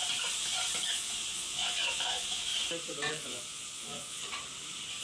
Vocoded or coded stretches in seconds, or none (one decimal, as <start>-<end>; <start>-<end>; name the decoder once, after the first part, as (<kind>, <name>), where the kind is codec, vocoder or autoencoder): 0.9-2.5 (vocoder, Vocos); 3.1-4.2